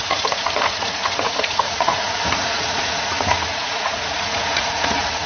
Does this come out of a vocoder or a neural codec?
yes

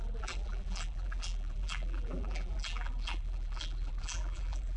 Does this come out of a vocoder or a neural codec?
yes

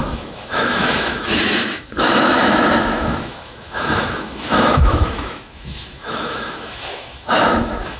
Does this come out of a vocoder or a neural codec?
yes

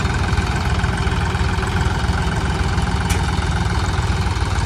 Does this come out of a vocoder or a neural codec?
no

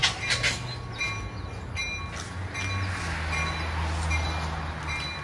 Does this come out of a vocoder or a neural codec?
no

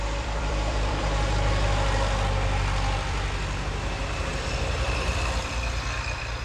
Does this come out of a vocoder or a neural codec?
yes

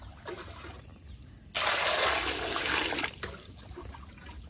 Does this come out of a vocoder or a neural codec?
no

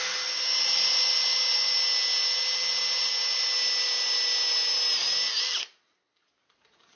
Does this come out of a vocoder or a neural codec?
no